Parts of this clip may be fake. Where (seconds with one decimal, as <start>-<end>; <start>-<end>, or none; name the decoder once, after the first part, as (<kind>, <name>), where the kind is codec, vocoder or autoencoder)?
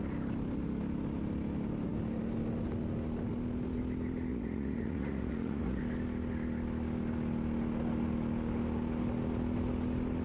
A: 4.3-5.8 (vocoder, Vocos)